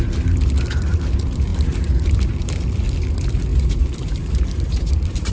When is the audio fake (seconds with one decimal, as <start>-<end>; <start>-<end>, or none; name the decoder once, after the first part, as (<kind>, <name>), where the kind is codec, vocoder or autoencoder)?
1.5-2.6 (vocoder, BigVGAN v2); 3.5-5.3